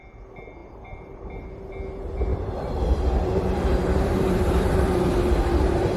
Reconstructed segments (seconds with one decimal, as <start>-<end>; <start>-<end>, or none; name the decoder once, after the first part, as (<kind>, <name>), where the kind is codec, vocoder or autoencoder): 0.6-1.7 (vocoder, BigVGAN v2); 2.3-5.4